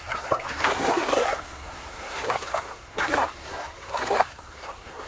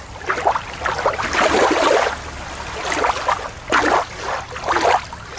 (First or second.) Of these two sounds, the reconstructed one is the first